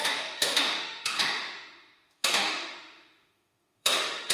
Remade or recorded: remade